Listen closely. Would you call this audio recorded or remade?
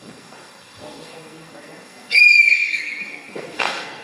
remade